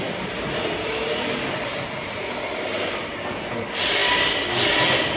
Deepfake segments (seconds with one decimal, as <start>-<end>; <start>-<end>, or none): none